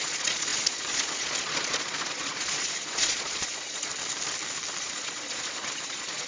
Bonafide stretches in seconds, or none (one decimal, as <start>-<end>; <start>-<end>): 3.9-4.8